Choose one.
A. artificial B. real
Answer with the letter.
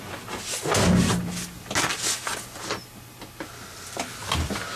B